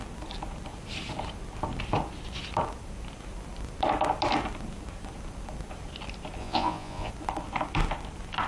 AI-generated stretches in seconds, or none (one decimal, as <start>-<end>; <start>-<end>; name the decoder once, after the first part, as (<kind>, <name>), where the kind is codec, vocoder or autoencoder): 6.4-7.1 (vocoder, Vocos)